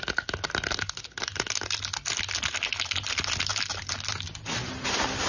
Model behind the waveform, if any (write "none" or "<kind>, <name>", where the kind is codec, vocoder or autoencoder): none